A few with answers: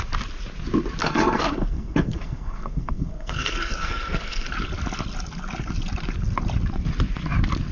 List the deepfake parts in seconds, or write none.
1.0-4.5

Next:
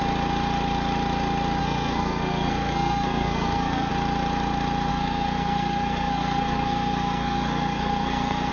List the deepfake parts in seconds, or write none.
1.6-3.9; 4.9-8.5

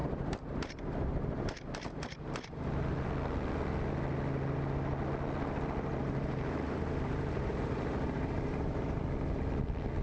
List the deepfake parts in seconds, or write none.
0.0-3.1; 6.0-9.0

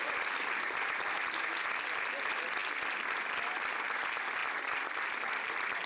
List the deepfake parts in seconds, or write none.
none

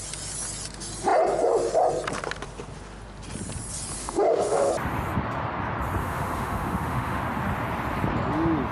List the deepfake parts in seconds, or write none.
4.0-4.7; 6.0-7.2

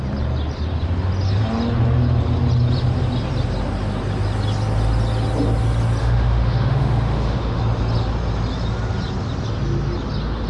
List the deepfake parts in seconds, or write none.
6.0-7.6

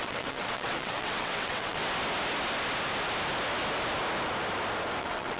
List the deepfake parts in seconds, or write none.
0.0-1.8; 5.0-5.4